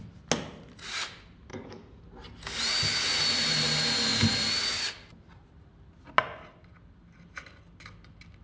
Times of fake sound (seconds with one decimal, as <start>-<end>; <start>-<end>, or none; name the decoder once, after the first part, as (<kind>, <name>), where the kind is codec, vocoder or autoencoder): 1.5-2.0 (codec, DAC)